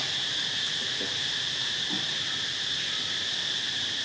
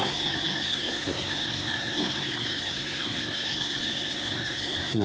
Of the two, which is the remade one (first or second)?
second